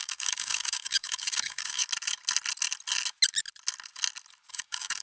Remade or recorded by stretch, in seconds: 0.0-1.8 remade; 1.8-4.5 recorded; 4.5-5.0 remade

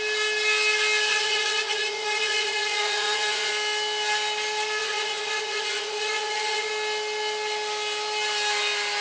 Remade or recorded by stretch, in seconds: 0.0-1.1 recorded; 1.1-3.5 remade; 3.5-4.8 recorded; 4.8-6.7 remade; 6.7-9.0 recorded

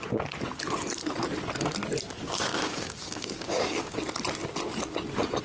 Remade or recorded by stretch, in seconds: 0.0-2.5 recorded; 2.5-4.0 remade; 4.0-5.4 recorded